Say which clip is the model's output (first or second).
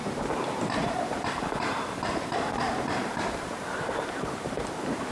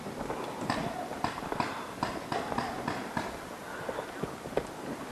first